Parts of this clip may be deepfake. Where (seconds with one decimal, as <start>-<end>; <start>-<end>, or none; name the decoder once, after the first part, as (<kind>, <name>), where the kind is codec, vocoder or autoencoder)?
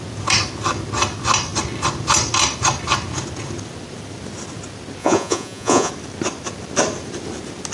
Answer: 5.0-5.9 (vocoder, Vocos)